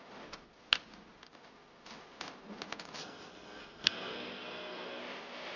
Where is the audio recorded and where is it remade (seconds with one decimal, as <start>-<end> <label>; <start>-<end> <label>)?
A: 0.0-3.0 recorded; 3.0-5.0 remade; 5.0-5.6 recorded